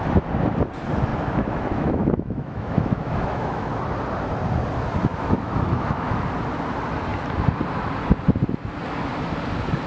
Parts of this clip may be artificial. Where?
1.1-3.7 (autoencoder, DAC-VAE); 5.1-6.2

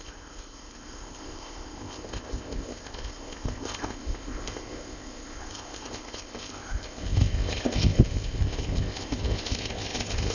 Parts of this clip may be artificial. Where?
0.0-10.3 (codec, ZipCodec)

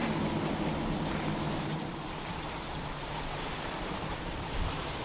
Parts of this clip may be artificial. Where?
1.6-5.0 (vocoder, BigVGAN v2)

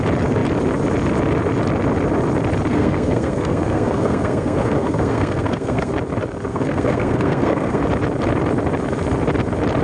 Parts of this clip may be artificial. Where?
2.7-5.9 (codec, SNAC); 6.5-7.8

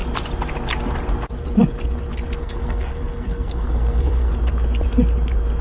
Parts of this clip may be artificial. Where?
2.4-4.3 (codec, SNAC)

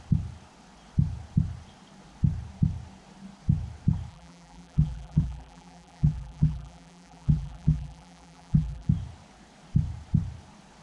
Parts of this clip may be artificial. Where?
4.1-8.9 (vocoder, BigVGAN v2)